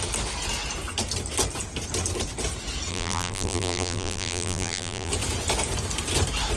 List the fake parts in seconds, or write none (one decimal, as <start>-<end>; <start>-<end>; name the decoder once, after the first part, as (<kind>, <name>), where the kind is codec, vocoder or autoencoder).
2.9-5.1 (vocoder, BigVGAN v2)